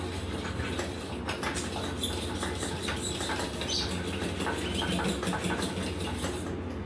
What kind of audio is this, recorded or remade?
recorded